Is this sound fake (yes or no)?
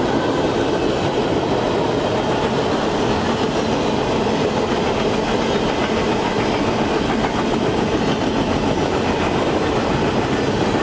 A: no